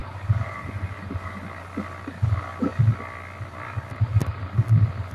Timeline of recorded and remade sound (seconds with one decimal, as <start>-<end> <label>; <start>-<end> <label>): 0.0-1.4 remade; 1.4-5.1 recorded